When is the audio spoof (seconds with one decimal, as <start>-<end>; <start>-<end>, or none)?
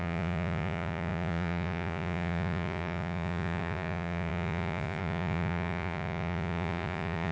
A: 0.0-7.3